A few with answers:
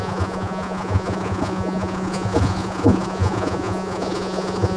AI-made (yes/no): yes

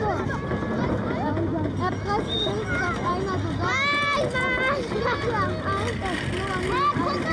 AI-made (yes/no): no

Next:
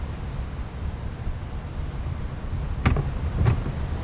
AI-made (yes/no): no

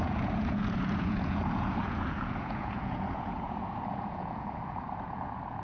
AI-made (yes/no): yes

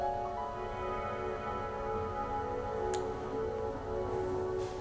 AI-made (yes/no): no